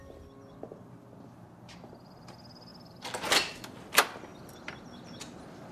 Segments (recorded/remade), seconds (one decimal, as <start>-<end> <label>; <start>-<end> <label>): 0.0-5.7 recorded